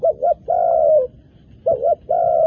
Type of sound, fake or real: real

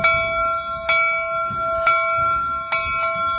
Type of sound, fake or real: real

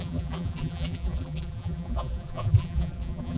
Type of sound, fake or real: fake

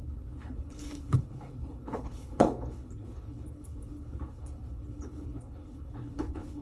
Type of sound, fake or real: fake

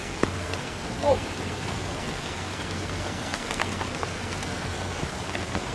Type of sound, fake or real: fake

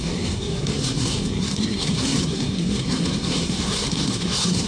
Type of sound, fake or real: fake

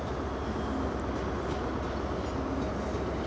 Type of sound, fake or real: real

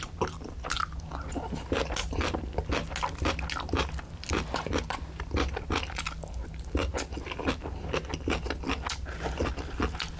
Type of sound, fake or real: real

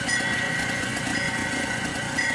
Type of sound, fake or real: fake